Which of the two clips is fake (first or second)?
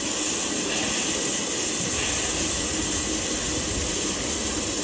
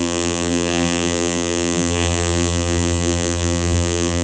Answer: second